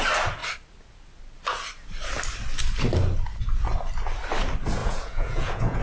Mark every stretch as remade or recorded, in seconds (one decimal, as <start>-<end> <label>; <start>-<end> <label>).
0.0-4.8 recorded; 4.8-5.8 remade